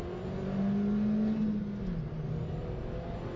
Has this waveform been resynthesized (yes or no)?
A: no